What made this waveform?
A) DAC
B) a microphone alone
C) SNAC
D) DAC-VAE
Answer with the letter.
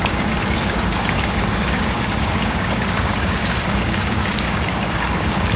A